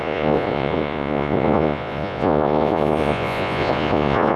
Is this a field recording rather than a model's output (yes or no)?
no